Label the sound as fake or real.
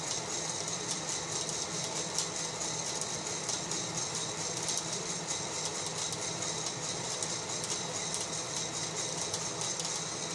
real